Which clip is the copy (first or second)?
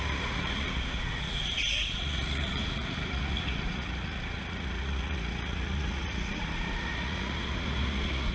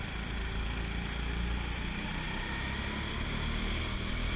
first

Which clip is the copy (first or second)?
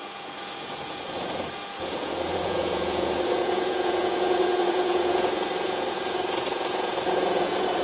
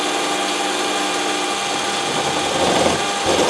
first